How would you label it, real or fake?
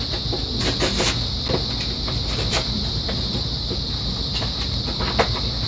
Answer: real